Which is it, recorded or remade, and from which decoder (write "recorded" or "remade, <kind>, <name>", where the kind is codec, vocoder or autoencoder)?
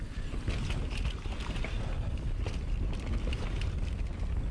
recorded